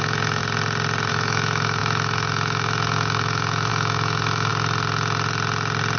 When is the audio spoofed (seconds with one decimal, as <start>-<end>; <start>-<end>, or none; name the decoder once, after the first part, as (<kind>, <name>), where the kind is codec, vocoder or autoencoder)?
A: 0.0-0.4 (autoencoder, DAC-VAE); 1.1-4.5